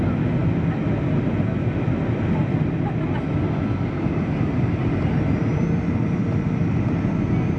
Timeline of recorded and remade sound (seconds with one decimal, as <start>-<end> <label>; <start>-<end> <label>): 0.0-7.6 recorded